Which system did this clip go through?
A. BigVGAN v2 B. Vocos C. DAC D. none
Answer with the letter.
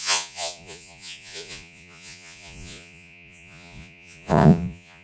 B